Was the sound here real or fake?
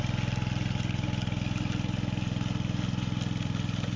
real